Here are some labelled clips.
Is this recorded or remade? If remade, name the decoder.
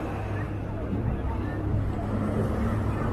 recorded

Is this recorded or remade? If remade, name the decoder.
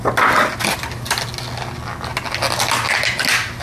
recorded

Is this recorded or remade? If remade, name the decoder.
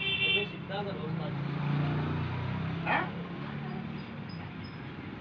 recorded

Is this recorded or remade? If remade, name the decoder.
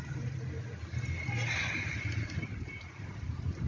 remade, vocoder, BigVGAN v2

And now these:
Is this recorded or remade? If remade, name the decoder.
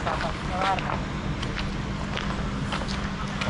recorded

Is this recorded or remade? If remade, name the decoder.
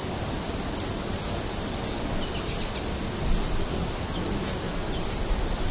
recorded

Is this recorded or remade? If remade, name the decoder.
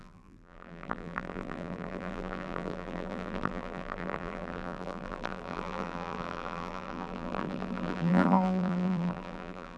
remade, vocoder, BigVGAN v2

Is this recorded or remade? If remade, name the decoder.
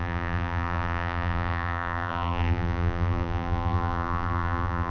remade, vocoder, BigVGAN v2